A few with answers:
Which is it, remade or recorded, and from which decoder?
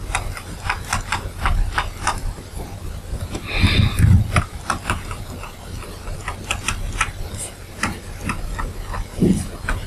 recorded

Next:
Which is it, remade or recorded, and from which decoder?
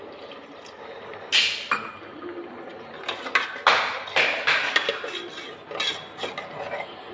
recorded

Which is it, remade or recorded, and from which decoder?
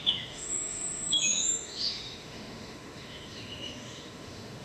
remade, autoencoder, DAC-VAE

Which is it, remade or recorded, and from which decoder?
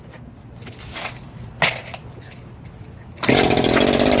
recorded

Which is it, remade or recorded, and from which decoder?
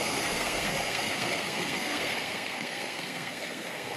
remade, codec, SNAC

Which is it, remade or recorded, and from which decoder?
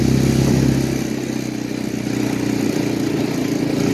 recorded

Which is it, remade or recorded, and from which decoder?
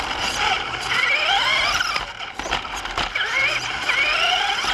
recorded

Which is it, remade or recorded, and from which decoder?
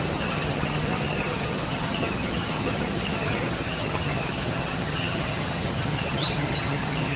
remade, vocoder, HiFi-GAN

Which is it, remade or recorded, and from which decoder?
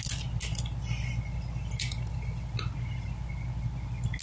recorded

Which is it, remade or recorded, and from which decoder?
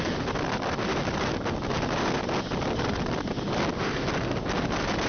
recorded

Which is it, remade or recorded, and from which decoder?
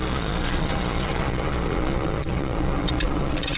remade, vocoder, Vocos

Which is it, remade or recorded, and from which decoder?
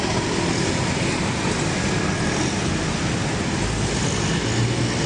recorded